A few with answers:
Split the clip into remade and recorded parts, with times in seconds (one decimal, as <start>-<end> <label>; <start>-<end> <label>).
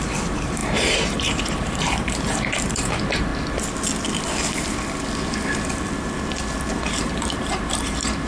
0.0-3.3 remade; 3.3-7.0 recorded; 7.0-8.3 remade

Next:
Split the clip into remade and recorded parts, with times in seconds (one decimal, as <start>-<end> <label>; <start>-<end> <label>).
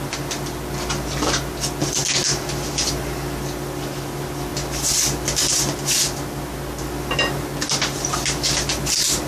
0.0-9.3 recorded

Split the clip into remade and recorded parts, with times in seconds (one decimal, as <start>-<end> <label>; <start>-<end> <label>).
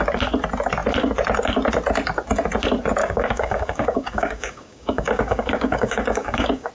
0.0-3.0 recorded; 3.0-6.7 remade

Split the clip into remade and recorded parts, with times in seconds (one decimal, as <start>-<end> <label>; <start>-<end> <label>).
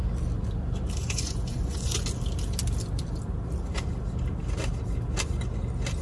0.0-1.0 recorded; 1.0-2.0 remade; 2.0-6.0 recorded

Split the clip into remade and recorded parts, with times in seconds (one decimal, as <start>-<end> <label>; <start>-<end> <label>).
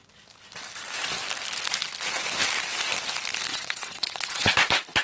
0.0-3.5 recorded; 3.5-4.5 remade; 4.5-5.0 recorded